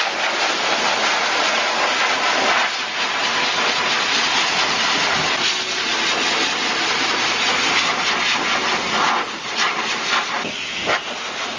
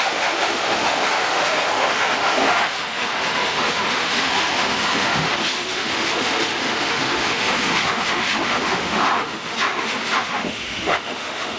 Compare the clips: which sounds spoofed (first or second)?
second